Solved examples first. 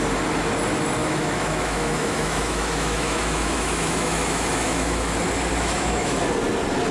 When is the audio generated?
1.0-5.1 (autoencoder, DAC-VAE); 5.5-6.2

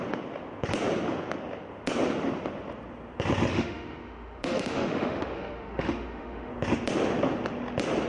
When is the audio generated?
3.5-6.5 (autoencoder, DAC-VAE)

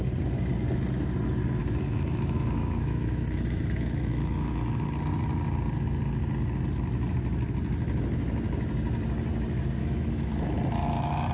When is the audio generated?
1.6-4.5 (autoencoder, DAC-VAE); 9.8-10.3

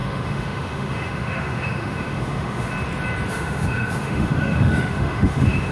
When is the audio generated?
0.0-2.7 (autoencoder, DAC-VAE); 3.3-5.7

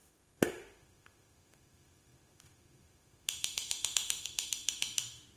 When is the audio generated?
0.0-5.4 (autoencoder, DAC-VAE)

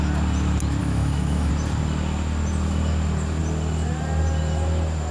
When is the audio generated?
0.8-1.5 (autoencoder, DAC-VAE)